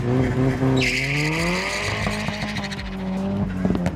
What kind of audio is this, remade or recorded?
recorded